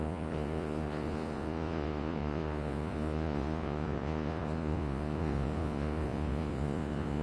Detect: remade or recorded remade